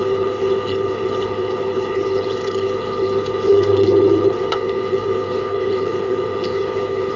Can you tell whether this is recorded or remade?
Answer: remade